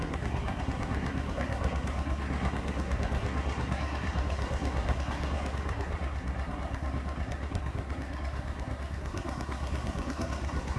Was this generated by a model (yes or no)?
yes